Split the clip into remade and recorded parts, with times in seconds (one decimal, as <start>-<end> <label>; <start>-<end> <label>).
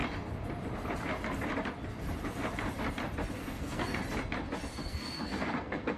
0.0-3.4 recorded; 3.4-4.0 remade; 4.0-4.8 recorded; 4.8-6.0 remade